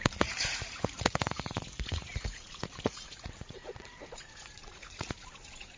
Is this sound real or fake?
fake